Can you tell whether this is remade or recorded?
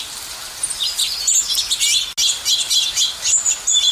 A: recorded